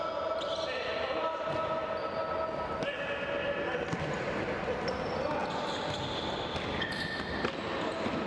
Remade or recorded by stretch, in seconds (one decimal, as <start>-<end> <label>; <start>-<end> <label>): 0.0-8.3 recorded